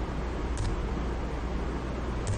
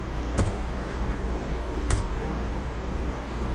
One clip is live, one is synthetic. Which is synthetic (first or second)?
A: second